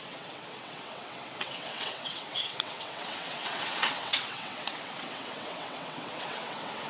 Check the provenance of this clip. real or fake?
fake